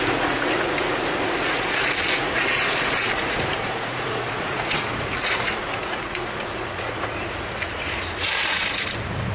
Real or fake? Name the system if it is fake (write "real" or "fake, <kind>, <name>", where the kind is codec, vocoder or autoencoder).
fake, vocoder, Vocos